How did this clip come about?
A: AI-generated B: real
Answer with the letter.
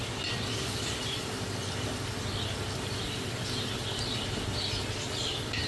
B